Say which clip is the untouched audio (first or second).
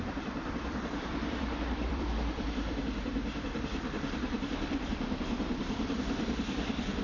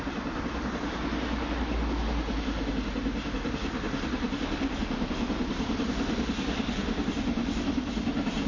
second